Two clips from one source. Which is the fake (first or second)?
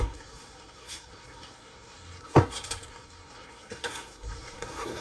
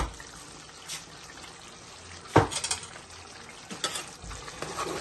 first